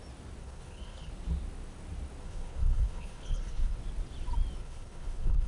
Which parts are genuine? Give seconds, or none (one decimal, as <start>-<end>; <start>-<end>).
0.0-0.4; 1.1-2.2; 3.8-4.6